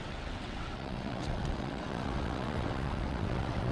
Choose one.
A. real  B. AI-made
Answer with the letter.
B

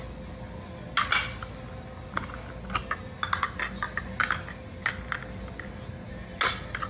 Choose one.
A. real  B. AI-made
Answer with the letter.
A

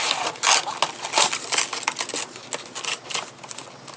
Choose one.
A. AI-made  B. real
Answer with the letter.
B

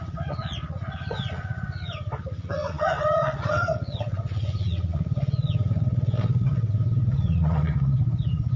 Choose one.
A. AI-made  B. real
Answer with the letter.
A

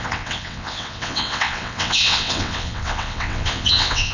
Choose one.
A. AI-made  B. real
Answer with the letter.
A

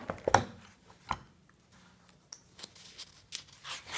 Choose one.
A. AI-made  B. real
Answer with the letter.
B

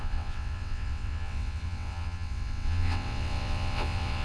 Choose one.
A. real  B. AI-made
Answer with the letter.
B